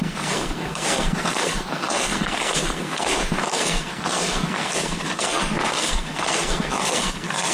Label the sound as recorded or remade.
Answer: remade